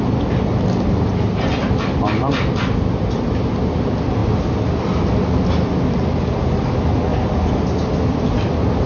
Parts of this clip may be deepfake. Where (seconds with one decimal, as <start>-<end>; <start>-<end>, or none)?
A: none